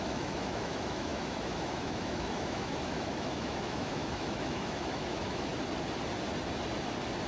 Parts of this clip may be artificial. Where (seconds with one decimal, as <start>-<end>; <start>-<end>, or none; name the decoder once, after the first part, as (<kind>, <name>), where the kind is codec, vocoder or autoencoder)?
0.0-5.5 (autoencoder, DAC-VAE)